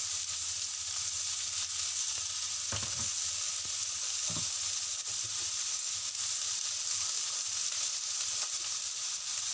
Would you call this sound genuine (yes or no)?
yes